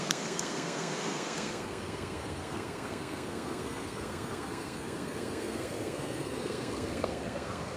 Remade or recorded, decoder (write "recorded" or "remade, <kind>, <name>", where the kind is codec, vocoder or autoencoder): remade, codec, SNAC